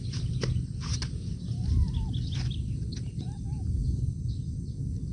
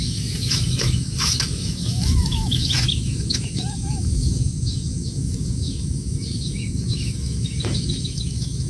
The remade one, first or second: second